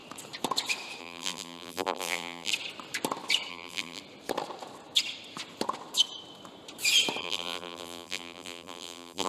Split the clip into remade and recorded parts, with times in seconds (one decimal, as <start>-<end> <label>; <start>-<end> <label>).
0.0-1.0 recorded; 1.0-2.5 remade; 2.5-3.5 recorded; 3.5-4.0 remade; 4.0-7.2 recorded; 7.2-9.3 remade